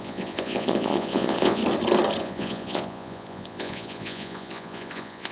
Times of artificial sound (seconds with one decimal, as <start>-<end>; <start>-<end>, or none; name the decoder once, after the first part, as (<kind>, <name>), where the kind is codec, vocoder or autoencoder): 0.0-1.6 (vocoder, Vocos); 2.2-5.3